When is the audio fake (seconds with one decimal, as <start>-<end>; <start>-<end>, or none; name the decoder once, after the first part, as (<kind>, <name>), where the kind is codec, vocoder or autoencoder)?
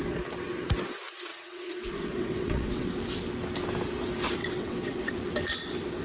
1.3-2.9 (vocoder, WaveNeXt); 4.4-5.1